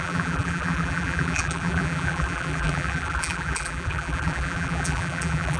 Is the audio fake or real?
fake